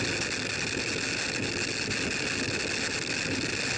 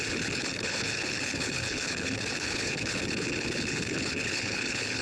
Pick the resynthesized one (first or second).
second